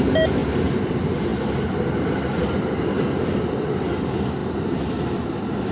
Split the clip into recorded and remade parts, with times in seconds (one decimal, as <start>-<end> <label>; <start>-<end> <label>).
0.0-5.7 recorded